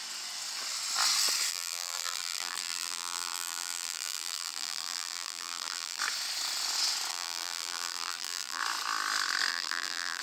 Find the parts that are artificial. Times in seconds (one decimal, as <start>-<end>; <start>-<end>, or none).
1.5-6.0; 7.1-8.6; 9.5-10.2